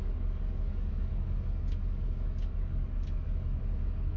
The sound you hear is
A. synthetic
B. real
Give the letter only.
A